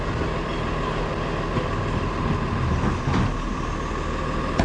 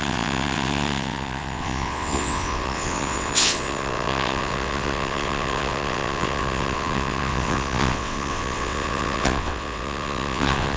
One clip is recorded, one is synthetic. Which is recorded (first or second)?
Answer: first